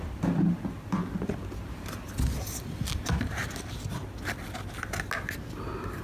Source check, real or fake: real